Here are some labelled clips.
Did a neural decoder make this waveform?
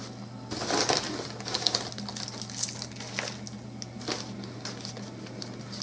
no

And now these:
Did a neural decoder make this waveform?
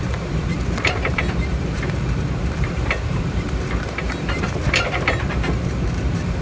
yes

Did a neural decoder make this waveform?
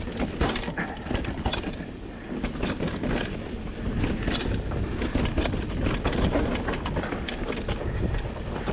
no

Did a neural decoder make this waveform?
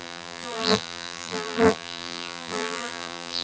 yes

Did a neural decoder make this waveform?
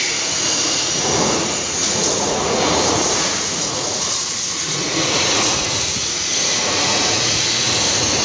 yes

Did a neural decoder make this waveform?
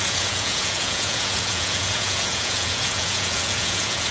yes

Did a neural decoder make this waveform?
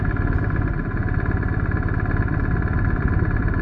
no